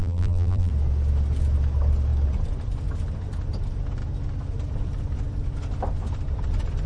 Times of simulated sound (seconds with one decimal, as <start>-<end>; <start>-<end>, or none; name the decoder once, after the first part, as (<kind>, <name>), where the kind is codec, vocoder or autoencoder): 0.0-0.7 (vocoder, BigVGAN v2)